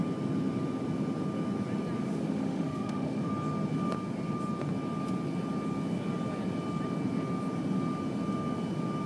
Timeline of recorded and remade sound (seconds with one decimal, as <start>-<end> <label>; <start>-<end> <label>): 0.0-2.0 recorded; 2.0-3.3 remade; 3.3-9.1 recorded